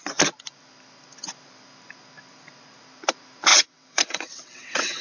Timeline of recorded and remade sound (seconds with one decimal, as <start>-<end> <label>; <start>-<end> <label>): 0.0-3.5 recorded; 3.5-5.0 remade